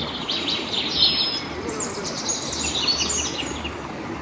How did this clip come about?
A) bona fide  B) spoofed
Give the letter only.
A